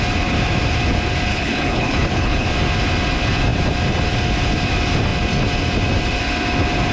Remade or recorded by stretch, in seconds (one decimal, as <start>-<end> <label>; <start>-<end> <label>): 0.0-1.3 recorded; 1.3-2.5 remade; 2.5-6.9 recorded